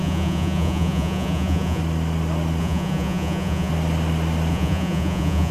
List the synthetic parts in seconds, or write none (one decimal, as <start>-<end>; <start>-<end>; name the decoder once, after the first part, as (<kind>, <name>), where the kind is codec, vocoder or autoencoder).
0.0-1.8 (vocoder, Vocos); 2.6-3.7; 4.5-5.5